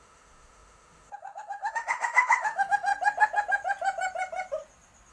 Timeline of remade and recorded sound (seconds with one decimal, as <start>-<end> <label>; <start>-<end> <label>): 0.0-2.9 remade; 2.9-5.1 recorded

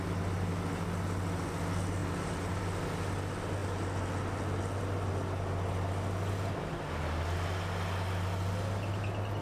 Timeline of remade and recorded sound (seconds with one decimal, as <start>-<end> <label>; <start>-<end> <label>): 0.0-2.0 recorded; 2.0-2.6 remade; 2.6-9.4 recorded

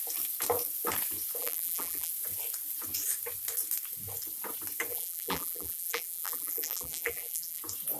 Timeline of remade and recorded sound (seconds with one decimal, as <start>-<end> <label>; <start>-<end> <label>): 0.0-1.4 recorded; 1.4-2.1 remade; 2.1-4.9 recorded; 4.9-7.6 remade; 7.6-8.0 recorded

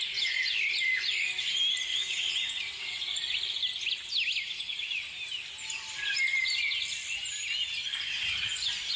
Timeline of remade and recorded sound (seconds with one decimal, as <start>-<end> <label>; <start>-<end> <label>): 0.0-1.9 recorded; 1.9-3.1 remade; 3.1-9.0 recorded

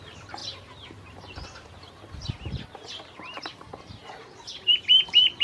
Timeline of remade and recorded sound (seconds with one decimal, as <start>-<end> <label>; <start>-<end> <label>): 0.0-5.4 remade

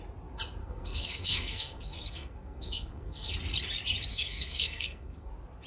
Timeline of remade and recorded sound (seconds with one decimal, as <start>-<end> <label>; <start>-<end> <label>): 0.0-0.6 recorded; 0.6-3.3 remade; 3.3-4.1 recorded; 4.1-5.3 remade; 5.3-5.7 recorded

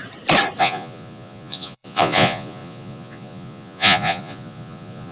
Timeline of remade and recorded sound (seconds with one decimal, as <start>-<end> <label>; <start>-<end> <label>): 0.0-0.6 recorded; 0.6-5.1 remade